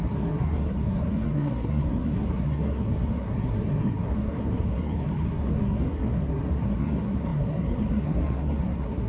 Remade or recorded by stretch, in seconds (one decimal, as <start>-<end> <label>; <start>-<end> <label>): 0.0-9.1 remade

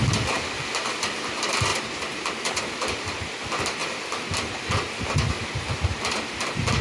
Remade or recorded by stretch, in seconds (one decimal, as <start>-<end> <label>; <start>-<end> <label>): 0.0-6.8 recorded

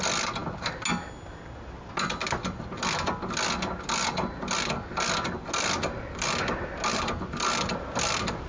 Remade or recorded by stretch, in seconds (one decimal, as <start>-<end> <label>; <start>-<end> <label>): 0.0-8.5 recorded

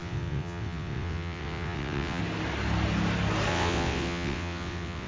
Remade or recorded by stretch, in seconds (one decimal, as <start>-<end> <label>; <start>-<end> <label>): 0.0-2.2 remade; 2.2-3.5 recorded; 3.5-5.1 remade